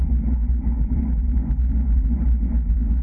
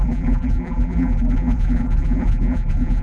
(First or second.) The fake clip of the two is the second